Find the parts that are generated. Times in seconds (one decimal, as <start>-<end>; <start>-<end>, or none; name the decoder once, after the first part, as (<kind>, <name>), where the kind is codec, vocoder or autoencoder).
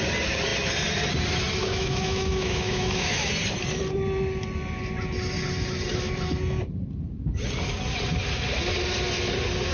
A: 1.6-3.3 (autoencoder, DAC-VAE)